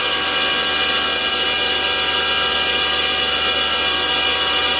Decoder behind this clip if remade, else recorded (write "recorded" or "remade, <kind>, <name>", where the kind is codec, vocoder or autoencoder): recorded